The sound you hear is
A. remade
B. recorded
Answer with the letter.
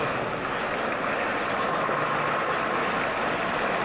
B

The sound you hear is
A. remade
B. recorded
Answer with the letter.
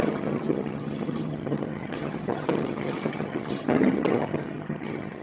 A